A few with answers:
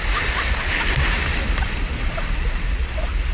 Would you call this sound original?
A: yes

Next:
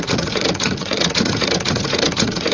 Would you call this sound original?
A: no